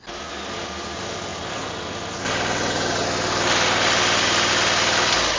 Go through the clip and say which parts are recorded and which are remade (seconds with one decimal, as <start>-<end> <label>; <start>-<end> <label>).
0.0-5.4 recorded